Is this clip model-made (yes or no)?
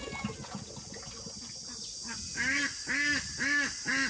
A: no